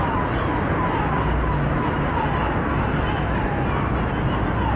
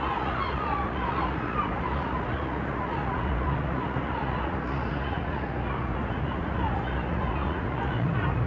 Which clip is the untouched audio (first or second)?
first